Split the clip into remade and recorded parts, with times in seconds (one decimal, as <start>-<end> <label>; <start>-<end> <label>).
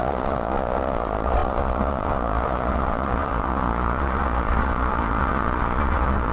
0.0-6.3 remade